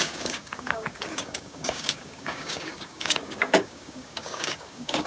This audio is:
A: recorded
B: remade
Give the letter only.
B